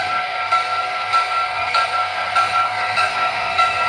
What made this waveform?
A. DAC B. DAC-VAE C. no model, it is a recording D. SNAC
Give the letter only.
D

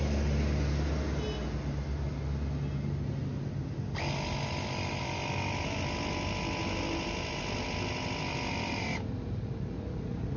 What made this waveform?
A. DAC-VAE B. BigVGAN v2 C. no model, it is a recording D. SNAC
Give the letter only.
C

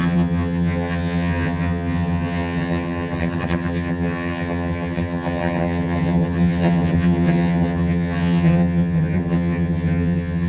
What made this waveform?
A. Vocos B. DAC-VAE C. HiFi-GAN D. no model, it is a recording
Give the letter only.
C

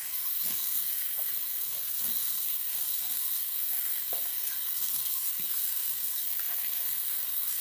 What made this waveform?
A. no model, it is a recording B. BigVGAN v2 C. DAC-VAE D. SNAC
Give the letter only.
D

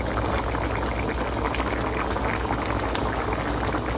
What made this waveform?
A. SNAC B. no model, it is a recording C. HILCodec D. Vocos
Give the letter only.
B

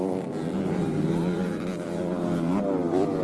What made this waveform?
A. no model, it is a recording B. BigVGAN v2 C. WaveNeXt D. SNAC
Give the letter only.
A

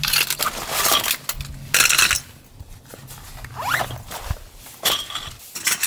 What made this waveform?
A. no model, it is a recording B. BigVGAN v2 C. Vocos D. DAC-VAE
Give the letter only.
A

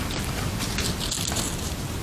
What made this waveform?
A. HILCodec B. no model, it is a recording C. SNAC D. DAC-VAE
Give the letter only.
B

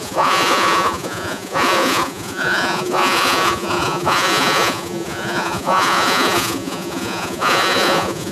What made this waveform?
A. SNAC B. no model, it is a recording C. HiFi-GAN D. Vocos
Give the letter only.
D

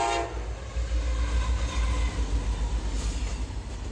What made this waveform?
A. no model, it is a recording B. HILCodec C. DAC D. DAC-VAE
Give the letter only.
A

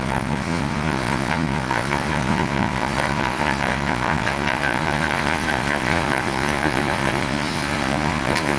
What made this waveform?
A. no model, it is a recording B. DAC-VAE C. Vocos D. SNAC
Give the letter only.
C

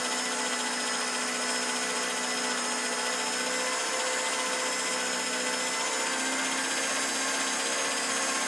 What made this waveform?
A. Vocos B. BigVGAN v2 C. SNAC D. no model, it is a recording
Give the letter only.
D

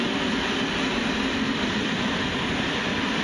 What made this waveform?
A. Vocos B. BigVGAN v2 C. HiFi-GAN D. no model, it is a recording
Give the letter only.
B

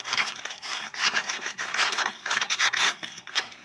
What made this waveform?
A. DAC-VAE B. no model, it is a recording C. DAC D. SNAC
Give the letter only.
D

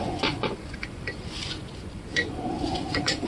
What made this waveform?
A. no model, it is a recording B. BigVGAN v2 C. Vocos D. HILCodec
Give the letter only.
C